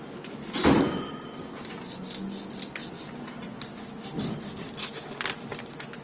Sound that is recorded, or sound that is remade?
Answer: recorded